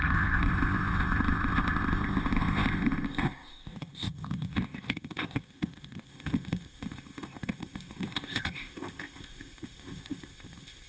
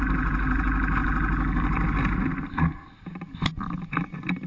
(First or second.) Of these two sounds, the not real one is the first